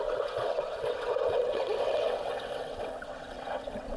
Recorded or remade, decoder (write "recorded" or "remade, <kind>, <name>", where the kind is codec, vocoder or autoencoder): remade, vocoder, WaveNeXt